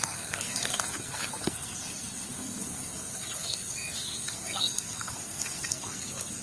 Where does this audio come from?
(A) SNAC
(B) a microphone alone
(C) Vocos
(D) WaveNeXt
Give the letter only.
A